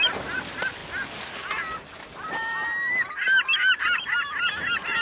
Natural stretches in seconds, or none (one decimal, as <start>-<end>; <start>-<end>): 0.0-5.0